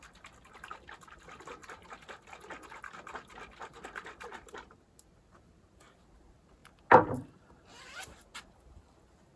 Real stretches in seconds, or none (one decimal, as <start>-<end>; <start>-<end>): 0.0-9.4

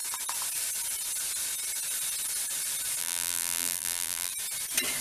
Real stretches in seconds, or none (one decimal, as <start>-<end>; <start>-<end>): 0.0-3.0; 4.3-5.0

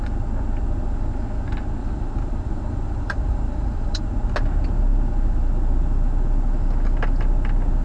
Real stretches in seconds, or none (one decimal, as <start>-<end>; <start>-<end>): 0.0-1.8; 4.0-7.8

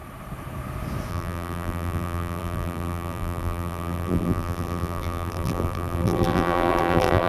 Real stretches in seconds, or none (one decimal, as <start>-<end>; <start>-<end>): 0.0-1.1

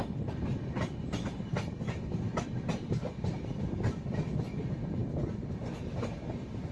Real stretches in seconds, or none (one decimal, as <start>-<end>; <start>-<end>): 0.0-6.7

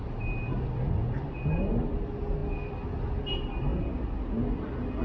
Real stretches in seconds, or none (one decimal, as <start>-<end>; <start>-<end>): 0.0-5.0

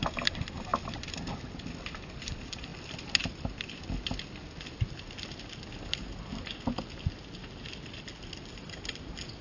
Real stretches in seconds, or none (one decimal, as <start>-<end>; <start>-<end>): 0.7-2.2; 2.7-5.7; 6.3-8.5